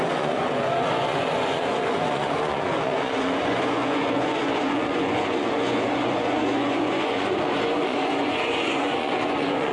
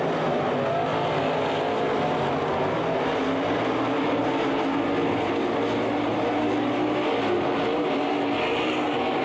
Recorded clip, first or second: second